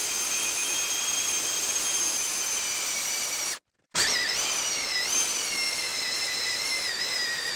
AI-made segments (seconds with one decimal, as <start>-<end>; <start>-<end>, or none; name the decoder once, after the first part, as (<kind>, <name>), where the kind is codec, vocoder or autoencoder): none